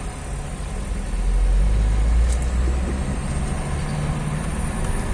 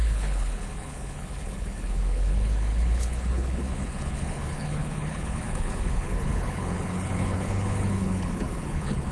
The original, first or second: first